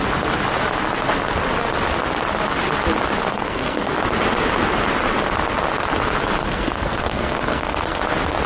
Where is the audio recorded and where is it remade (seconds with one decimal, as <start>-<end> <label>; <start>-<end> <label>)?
0.0-3.3 recorded; 3.3-3.9 remade; 3.9-6.4 recorded; 6.4-8.0 remade; 8.0-8.5 recorded